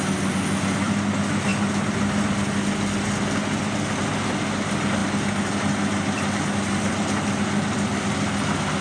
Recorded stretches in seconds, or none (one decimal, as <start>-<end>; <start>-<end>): 0.0-8.8